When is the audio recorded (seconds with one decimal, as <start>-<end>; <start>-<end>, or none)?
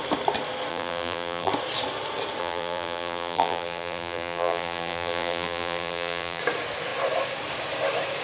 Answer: 0.0-0.7; 1.5-2.4; 6.4-8.2